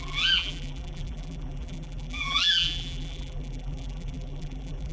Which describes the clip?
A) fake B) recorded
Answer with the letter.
A